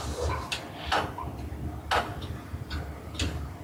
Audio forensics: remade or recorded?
recorded